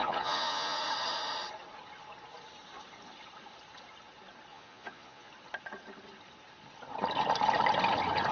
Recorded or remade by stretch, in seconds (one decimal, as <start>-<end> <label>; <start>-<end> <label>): 0.0-0.8 remade; 0.8-4.5 recorded; 4.5-5.3 remade; 5.3-8.3 recorded